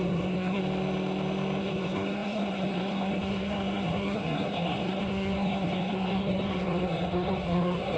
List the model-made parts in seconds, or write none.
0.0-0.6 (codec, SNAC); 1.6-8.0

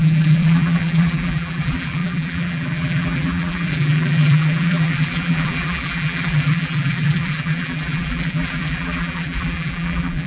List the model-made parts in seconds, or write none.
0.0-10.3 (vocoder, BigVGAN v2)

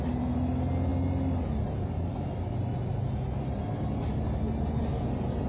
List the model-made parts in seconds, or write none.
none